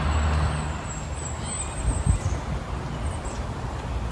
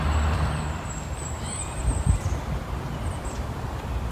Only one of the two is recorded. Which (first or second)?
first